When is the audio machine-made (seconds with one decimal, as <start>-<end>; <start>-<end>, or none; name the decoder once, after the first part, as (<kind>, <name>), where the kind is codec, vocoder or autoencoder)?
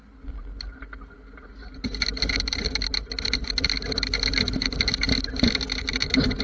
none